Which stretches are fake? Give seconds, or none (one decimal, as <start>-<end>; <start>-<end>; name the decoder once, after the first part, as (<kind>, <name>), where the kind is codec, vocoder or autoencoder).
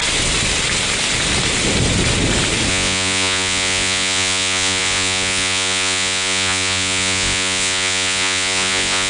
2.7-9.1 (vocoder, Vocos)